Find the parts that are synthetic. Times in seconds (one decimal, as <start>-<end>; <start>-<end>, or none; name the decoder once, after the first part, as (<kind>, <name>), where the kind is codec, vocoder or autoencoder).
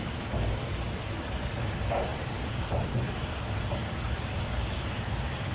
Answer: 2.1-4.2 (vocoder, BigVGAN v2)